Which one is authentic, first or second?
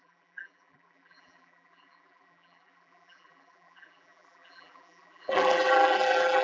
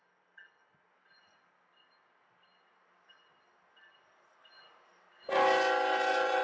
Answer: second